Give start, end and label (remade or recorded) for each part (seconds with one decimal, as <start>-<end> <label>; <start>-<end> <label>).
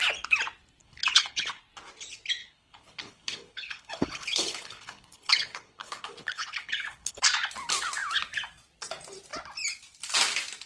0.0-0.8 recorded; 0.8-1.6 remade; 1.6-2.4 recorded; 2.4-7.2 remade; 7.2-10.7 recorded